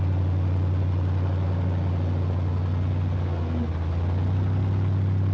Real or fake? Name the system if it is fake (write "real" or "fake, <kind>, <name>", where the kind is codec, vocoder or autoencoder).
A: real